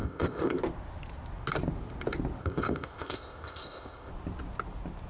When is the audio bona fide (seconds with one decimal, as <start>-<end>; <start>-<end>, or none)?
0.6-2.4; 4.1-5.1